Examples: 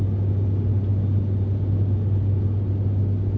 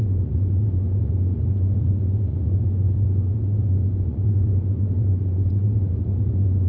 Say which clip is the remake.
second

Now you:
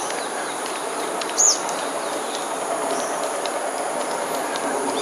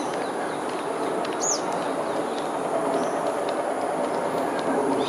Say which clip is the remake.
first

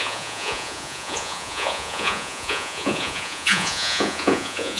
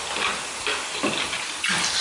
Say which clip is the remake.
first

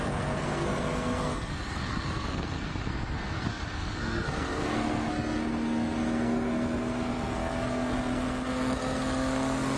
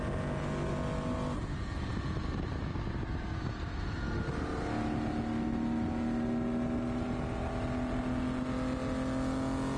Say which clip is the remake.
first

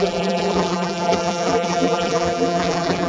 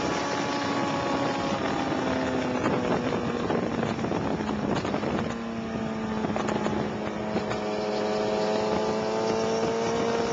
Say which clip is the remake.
first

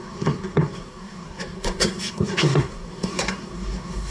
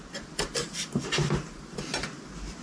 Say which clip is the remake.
first